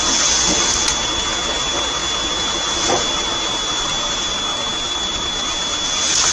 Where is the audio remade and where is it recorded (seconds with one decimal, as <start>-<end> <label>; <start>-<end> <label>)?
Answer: 0.0-6.3 recorded